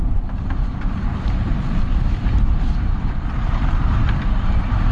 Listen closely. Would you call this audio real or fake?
fake